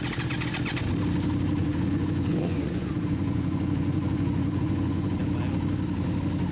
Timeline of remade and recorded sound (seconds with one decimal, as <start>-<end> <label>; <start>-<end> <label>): 0.0-1.6 recorded; 1.6-5.2 remade; 5.2-6.5 recorded